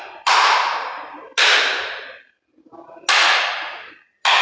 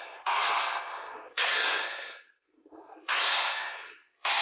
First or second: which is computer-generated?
second